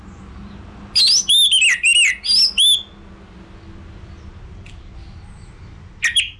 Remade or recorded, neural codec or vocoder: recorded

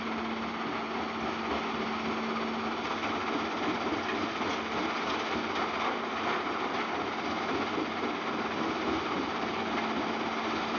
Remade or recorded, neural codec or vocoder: recorded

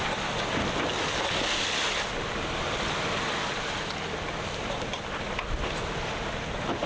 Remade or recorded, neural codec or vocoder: recorded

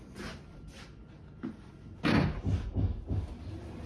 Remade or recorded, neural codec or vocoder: recorded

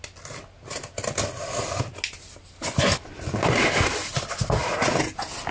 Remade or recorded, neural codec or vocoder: recorded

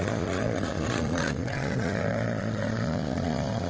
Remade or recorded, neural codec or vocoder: remade, vocoder, Vocos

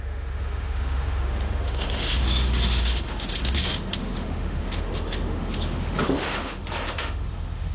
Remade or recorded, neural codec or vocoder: remade, autoencoder, DAC-VAE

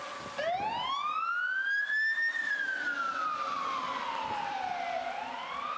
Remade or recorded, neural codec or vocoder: recorded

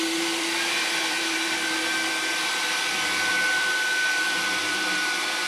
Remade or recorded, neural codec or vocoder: remade, vocoder, BigVGAN v2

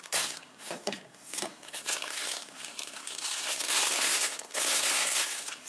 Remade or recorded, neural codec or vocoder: remade, codec, SNAC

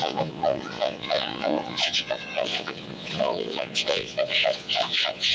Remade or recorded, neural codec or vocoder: remade, vocoder, Vocos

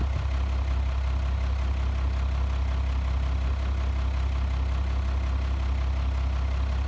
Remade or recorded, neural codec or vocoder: recorded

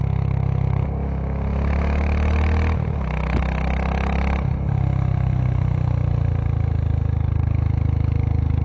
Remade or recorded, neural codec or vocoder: recorded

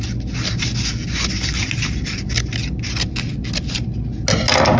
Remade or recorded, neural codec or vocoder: recorded